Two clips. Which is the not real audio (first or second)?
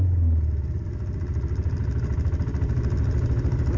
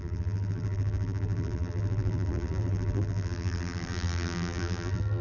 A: second